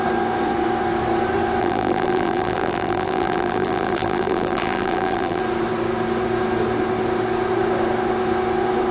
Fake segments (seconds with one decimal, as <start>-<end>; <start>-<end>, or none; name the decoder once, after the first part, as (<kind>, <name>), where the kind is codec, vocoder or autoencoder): 1.6-5.4 (vocoder, BigVGAN v2)